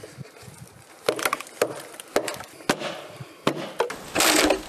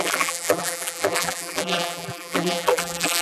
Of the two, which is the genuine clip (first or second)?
first